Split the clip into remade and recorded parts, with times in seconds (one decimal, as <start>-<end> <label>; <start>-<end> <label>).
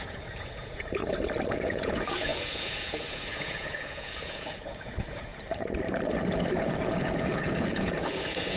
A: 0.0-1.0 remade; 1.0-1.5 recorded; 1.5-5.3 remade; 5.3-6.6 recorded; 6.6-8.6 remade